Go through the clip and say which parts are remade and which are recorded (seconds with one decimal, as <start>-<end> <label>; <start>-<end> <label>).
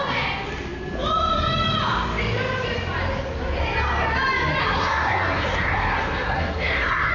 0.0-4.6 recorded; 4.6-7.1 remade